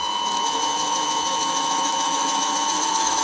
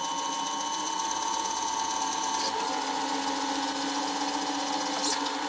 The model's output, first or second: first